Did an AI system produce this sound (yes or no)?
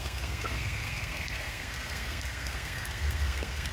yes